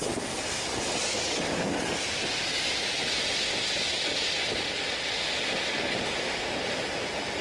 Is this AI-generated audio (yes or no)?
no